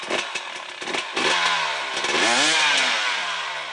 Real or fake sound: real